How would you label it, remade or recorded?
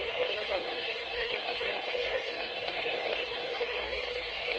remade